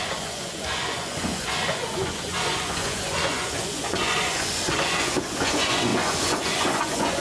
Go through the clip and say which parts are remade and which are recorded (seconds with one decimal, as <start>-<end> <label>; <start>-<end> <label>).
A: 0.0-7.2 remade